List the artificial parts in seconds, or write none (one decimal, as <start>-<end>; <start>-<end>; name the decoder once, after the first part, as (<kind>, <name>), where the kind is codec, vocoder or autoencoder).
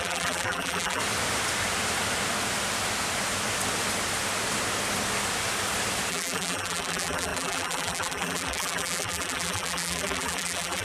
0.0-1.0 (vocoder, BigVGAN v2); 6.1-10.8